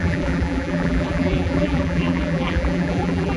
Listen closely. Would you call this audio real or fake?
fake